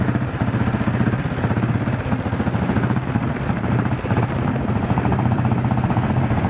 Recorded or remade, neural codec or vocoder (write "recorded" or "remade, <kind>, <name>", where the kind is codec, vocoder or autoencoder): recorded